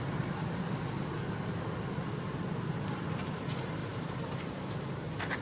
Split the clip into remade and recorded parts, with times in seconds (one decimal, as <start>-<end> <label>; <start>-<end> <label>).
0.0-5.4 recorded